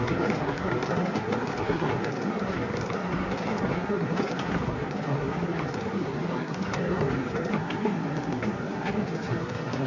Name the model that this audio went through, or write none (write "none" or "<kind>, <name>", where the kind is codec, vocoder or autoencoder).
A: codec, SNAC